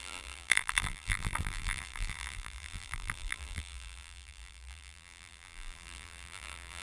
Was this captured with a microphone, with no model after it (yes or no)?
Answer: no